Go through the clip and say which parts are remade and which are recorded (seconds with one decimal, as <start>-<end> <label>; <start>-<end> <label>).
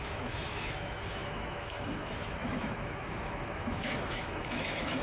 0.0-5.0 remade